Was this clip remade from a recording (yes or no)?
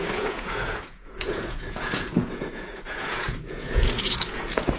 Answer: yes